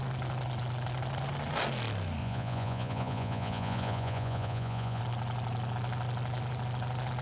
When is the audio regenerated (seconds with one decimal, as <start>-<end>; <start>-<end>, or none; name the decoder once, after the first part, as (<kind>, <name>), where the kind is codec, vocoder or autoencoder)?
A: 2.2-5.0 (vocoder, Vocos)